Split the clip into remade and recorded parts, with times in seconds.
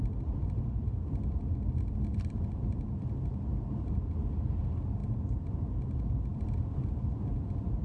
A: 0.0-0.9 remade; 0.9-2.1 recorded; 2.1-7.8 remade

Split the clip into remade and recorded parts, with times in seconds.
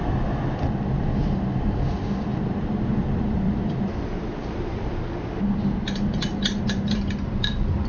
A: 0.0-0.7 remade; 0.7-2.3 recorded; 2.3-4.9 remade; 4.9-7.9 recorded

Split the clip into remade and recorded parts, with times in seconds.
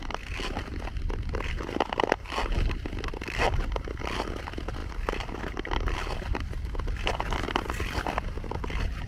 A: 0.0-9.1 recorded